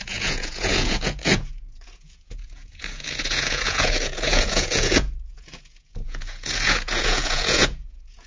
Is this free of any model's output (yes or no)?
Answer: no